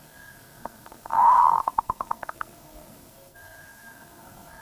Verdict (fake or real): fake